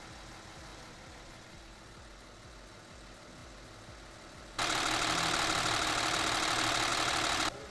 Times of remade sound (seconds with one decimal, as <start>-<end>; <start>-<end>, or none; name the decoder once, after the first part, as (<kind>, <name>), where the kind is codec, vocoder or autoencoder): 0.7-1.7 (vocoder, BigVGAN v2)

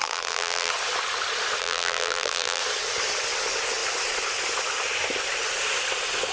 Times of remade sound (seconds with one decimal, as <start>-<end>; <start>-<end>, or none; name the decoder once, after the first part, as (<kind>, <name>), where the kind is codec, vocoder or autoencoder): 0.0-0.7 (vocoder, BigVGAN v2); 1.6-2.6

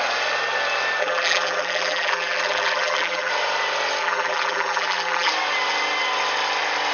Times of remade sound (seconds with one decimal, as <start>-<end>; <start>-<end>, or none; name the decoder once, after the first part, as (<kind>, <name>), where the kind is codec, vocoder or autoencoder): 1.0-3.3 (vocoder, BigVGAN v2); 4.0-5.3

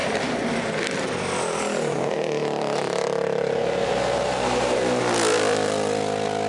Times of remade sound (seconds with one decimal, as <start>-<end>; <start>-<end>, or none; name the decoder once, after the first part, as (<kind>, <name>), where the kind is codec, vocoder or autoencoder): 2.4-5.0 (vocoder, BigVGAN v2)

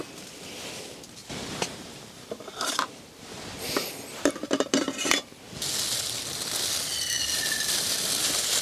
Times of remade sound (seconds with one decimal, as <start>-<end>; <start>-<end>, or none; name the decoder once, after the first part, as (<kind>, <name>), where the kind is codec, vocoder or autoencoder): 1.2-5.4 (vocoder, BigVGAN v2)